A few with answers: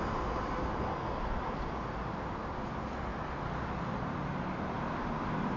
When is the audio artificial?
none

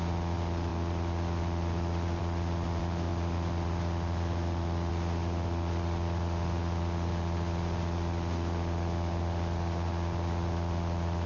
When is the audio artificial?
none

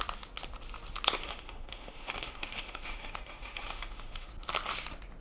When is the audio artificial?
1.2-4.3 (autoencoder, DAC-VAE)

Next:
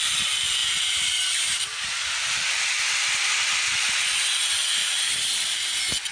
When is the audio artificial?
0.6-2.6 (vocoder, BigVGAN v2); 4.8-5.4

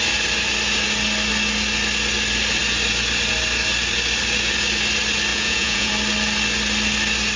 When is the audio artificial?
5.3-5.9 (vocoder, Vocos)